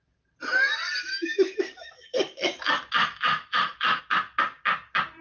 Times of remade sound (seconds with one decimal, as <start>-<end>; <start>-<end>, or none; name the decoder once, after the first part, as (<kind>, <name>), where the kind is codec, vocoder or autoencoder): 1.1-2.6 (autoencoder, DAC-VAE); 3.0-4.0